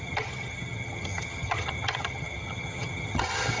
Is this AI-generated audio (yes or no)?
yes